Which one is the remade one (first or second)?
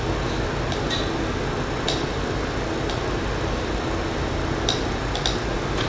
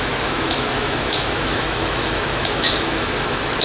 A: second